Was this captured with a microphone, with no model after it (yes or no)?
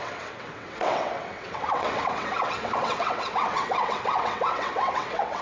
no